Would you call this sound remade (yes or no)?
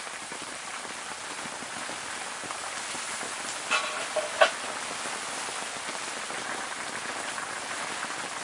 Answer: no